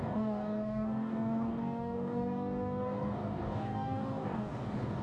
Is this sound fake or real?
fake